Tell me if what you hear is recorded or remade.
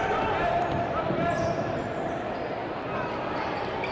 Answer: remade